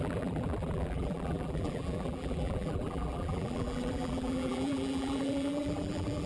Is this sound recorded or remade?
remade